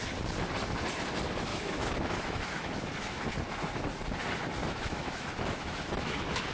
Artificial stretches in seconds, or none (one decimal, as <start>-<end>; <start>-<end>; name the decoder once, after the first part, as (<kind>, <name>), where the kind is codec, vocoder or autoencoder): 1.5-3.2 (autoencoder, DAC-VAE); 4.6-6.5